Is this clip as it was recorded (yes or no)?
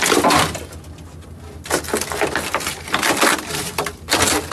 yes